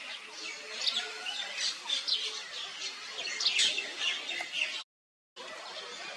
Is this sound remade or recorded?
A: recorded